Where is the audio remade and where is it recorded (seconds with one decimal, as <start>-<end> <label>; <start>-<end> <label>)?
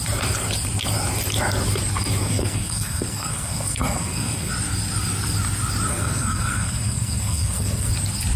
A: 0.0-2.2 recorded; 2.2-4.5 remade; 4.5-5.9 recorded; 5.9-7.9 remade; 7.9-8.4 recorded